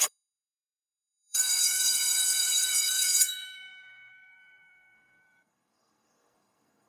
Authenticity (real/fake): fake